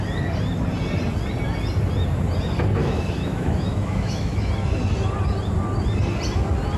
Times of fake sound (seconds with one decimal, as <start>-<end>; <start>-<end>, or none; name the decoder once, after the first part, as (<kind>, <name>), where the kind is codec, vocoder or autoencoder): 2.8-4.5 (autoencoder, DAC-VAE)

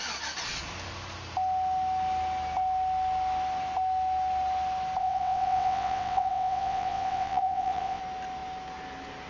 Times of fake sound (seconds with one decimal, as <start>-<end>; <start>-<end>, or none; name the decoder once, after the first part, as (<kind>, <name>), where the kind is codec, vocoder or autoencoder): 5.0-8.0 (vocoder, WaveNeXt)

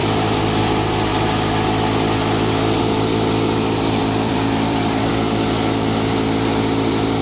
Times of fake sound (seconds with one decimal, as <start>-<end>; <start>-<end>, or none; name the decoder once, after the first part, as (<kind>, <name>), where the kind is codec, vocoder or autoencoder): 4.0-5.1 (vocoder, BigVGAN v2)

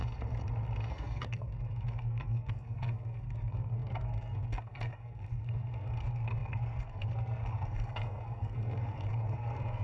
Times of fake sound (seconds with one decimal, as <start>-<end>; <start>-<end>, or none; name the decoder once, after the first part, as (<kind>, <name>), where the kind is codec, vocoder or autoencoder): 0.9-9.8 (codec, SNAC)

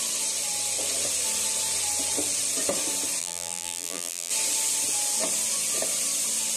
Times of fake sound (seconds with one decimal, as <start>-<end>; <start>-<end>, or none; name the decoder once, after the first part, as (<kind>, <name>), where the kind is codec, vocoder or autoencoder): 3.2-4.3 (vocoder, BigVGAN v2)

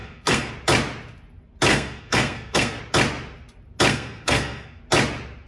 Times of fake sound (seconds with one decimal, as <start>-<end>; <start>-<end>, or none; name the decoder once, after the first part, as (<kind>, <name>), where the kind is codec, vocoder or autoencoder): 0.0-0.5 (codec, SNAC); 1.7-2.8; 3.9-4.8

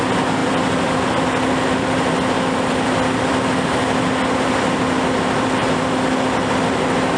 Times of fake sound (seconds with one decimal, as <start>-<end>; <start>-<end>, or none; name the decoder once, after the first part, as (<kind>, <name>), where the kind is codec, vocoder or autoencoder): 5.6-6.2 (vocoder, BigVGAN v2)